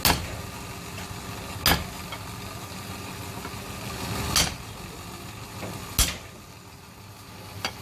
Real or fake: real